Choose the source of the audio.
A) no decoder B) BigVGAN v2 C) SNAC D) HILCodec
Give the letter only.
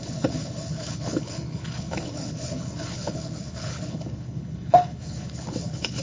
D